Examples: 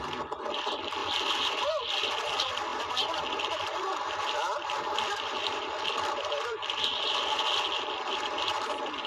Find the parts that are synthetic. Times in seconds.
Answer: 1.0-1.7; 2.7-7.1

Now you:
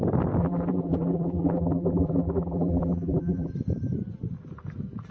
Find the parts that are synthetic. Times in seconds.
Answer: 0.4-3.5

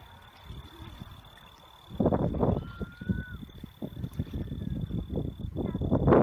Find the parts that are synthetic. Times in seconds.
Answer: none

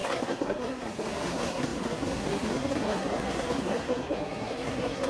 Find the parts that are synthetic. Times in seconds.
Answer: 0.0-5.1

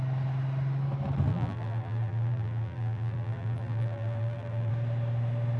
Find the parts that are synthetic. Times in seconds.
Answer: 1.3-4.7

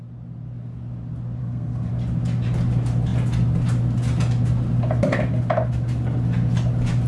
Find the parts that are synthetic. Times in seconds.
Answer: 1.4-1.9

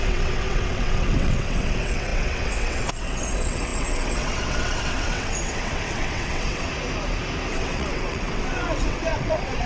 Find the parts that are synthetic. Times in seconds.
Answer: 0.0-6.7; 7.5-9.7

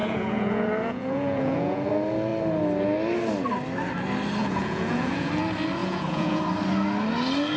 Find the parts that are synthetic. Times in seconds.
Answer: 0.0-1.9; 4.4-5.3; 5.8-6.4